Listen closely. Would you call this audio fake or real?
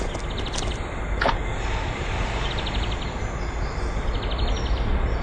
real